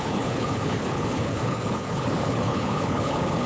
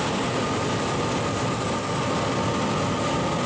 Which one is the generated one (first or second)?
first